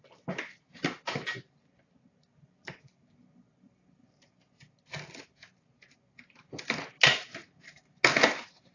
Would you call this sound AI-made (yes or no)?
no